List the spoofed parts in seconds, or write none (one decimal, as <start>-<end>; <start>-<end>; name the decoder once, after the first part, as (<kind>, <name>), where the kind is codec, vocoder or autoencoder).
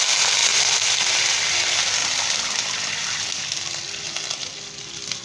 none